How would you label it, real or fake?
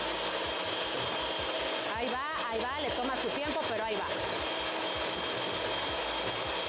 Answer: real